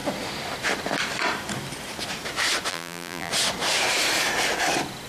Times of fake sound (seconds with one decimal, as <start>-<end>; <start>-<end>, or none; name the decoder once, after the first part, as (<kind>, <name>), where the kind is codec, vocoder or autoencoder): 2.7-3.3 (vocoder, BigVGAN v2)